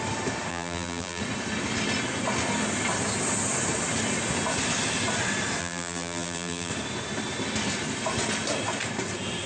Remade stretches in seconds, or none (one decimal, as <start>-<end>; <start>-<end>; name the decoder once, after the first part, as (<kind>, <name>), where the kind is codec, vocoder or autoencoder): 0.5-1.2 (vocoder, BigVGAN v2); 5.6-6.7